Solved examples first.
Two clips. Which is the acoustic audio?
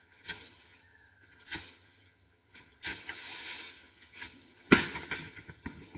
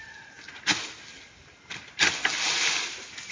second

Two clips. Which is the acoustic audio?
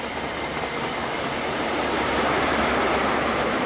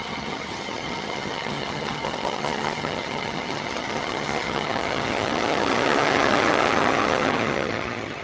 first